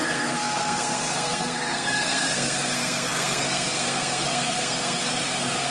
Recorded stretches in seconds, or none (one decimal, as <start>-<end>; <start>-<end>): none